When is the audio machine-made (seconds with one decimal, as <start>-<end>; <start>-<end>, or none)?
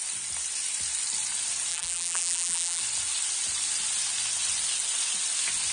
1.7-2.8